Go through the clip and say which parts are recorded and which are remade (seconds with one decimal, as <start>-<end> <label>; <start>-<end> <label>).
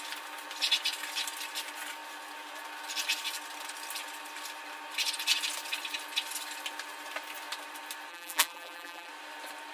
0.0-8.1 recorded; 8.1-9.1 remade; 9.1-9.7 recorded